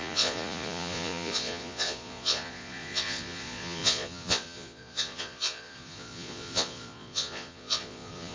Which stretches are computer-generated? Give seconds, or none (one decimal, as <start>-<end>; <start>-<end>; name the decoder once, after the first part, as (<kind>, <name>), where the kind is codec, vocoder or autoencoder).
0.0-8.3 (vocoder, Vocos)